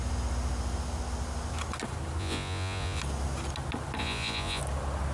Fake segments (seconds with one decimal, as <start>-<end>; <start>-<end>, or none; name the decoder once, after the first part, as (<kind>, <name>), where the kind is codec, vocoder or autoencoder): 2.2-3.0 (vocoder, Vocos); 4.0-4.6